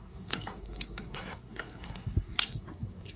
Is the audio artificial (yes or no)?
yes